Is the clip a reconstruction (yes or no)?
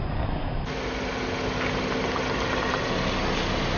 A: no